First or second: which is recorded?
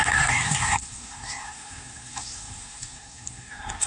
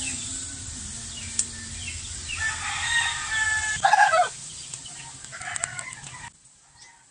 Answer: second